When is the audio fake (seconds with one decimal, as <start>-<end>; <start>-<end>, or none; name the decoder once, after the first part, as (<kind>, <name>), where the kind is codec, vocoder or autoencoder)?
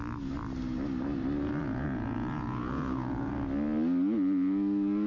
1.6-3.3 (vocoder, Vocos)